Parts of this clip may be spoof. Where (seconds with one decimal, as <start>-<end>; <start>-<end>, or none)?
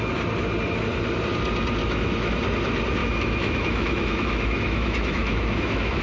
1.8-2.3; 3.0-6.0